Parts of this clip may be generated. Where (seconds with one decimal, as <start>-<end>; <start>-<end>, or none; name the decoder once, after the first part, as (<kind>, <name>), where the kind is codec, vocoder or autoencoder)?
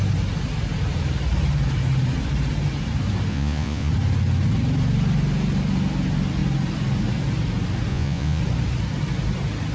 3.3-3.9 (vocoder, Vocos); 7.9-8.4